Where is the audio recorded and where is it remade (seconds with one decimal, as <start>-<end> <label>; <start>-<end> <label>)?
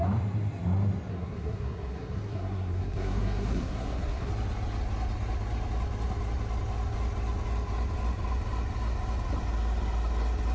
0.0-1.1 recorded; 1.1-4.3 remade; 4.3-10.5 recorded